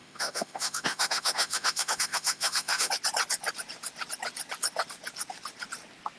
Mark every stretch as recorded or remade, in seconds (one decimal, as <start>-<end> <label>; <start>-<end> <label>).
0.0-2.9 remade; 2.9-6.2 recorded